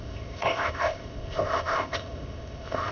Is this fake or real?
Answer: fake